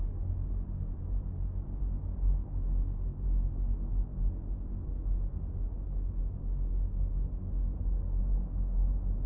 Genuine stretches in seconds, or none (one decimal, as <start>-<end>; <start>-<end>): 0.0-9.3